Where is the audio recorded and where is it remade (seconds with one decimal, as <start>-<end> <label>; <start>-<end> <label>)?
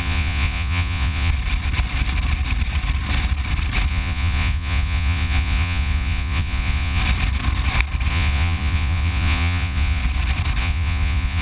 0.0-1.3 remade; 1.3-3.9 recorded; 3.9-7.0 remade; 7.0-8.1 recorded; 8.1-10.0 remade; 10.0-10.6 recorded; 10.6-11.4 remade